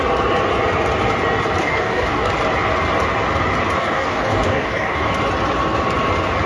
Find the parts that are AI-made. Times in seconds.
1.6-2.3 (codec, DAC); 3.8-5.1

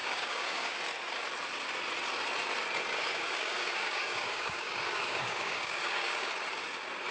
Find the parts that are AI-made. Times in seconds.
0.0-0.8 (codec, DAC); 2.9-6.3

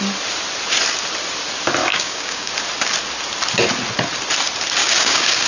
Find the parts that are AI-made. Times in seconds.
1.8-2.5 (codec, DAC); 4.8-5.5

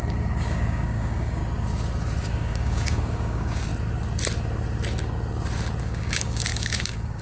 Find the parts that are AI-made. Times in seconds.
0.0-1.4 (codec, DAC); 2.2-3.7; 5.8-7.2

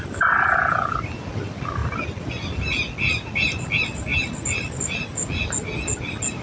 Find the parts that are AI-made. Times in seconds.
none

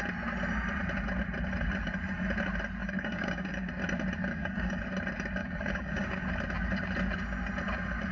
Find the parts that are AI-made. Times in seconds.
2.8-3.7 (codec, DAC); 4.3-4.8; 5.4-6.2

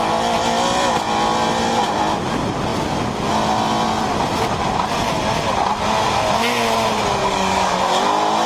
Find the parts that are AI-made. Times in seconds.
7.2-7.8 (codec, DAC)